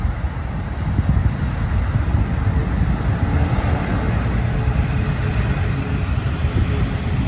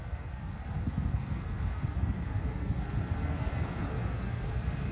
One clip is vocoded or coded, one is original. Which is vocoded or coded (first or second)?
second